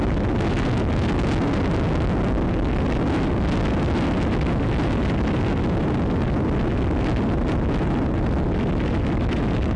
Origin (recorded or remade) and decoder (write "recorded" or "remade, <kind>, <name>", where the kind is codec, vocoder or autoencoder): recorded